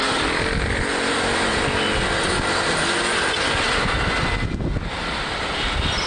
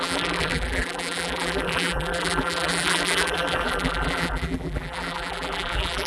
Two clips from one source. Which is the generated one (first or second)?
second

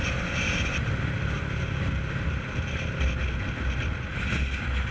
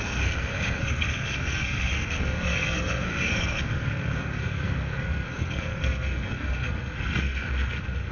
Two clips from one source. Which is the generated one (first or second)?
second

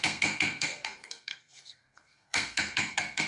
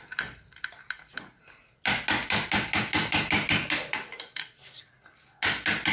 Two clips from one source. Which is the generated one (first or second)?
first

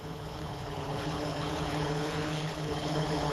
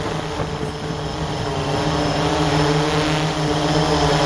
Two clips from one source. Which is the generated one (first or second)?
first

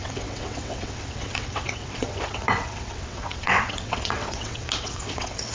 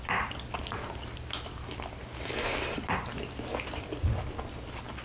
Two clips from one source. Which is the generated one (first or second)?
first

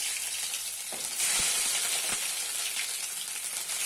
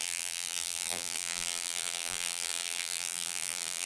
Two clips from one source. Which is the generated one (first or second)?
second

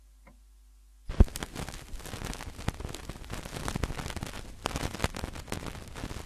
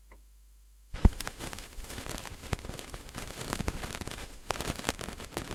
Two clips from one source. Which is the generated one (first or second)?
second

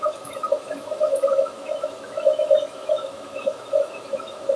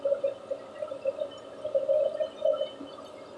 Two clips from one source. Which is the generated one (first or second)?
first